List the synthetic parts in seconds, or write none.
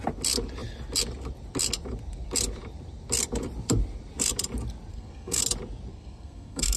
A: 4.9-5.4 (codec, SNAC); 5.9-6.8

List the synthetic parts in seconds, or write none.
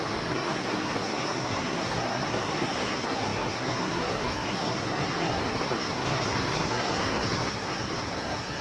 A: 0.0-8.6 (codec, SNAC)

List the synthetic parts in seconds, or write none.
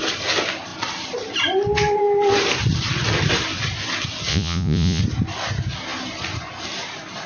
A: 4.3-5.0 (vocoder, Vocos)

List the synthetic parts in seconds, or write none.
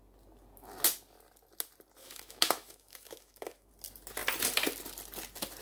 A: 2.0-3.7 (autoencoder, DAC-VAE)